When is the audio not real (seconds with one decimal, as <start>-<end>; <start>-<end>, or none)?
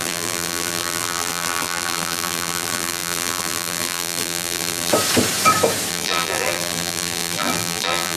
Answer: 0.0-4.9; 5.9-8.2